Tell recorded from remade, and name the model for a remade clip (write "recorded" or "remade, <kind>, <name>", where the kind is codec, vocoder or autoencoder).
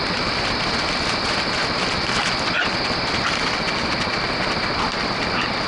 recorded